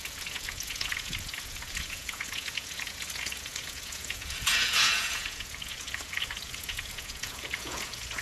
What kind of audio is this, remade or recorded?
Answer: remade